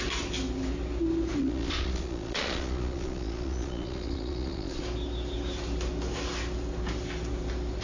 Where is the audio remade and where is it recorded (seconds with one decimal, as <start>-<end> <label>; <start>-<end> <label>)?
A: 0.0-1.4 recorded; 1.4-4.8 remade; 4.8-7.8 recorded